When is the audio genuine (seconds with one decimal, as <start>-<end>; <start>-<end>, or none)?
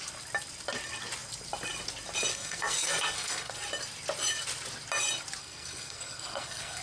0.0-2.3; 3.5-5.4